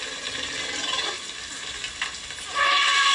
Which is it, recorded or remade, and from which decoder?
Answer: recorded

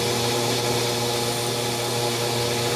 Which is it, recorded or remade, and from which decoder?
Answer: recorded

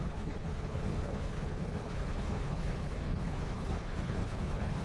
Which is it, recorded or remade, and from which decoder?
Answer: remade, codec, HILCodec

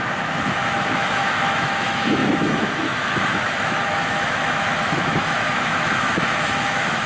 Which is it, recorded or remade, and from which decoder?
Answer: remade, autoencoder, DAC-VAE